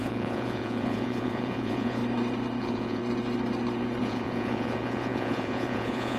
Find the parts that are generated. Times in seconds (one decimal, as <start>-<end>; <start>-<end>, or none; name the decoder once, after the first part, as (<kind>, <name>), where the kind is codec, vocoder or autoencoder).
0.0-2.0 (vocoder, Vocos); 2.6-3.0; 4.0-6.2